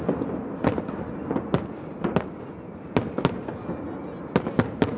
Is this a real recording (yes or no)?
yes